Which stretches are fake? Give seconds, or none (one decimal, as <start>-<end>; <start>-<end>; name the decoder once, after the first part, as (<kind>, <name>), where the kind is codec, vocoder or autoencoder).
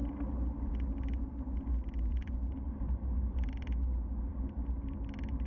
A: 0.0-0.7 (vocoder, BigVGAN v2); 2.1-3.5